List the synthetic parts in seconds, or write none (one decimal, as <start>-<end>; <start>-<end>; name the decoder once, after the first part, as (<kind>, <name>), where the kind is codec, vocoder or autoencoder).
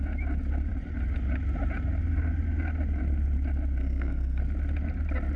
3.8-4.4 (codec, SNAC)